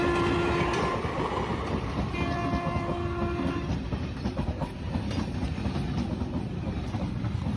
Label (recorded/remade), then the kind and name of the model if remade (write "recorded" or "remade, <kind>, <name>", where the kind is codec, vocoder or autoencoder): recorded